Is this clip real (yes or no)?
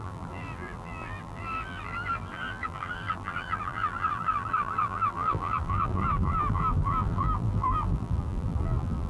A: no